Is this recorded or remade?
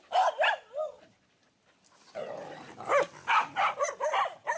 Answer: remade